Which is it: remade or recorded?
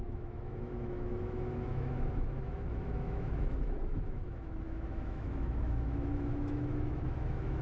remade